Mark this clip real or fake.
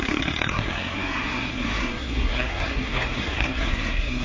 fake